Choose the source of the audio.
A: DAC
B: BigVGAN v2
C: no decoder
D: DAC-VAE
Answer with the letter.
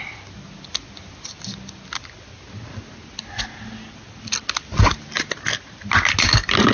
C